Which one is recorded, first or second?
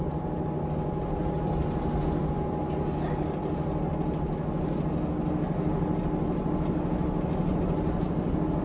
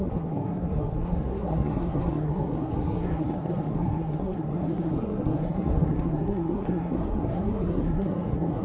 first